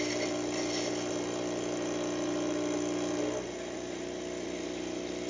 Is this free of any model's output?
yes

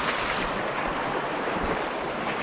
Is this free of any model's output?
yes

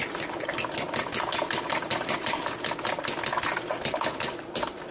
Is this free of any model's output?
yes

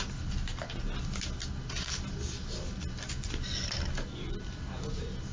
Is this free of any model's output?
yes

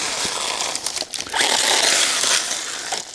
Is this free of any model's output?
yes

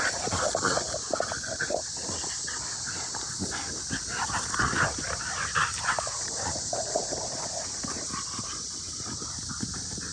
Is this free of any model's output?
yes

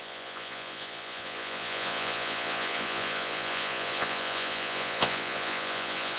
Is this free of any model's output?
no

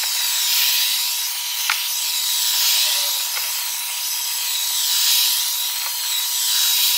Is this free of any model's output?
yes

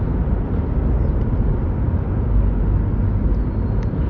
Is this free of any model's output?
yes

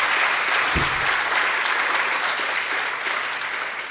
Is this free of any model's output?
yes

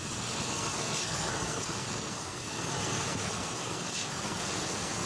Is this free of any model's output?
no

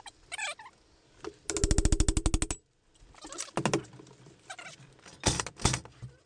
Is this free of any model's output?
yes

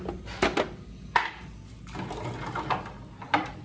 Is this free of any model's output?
yes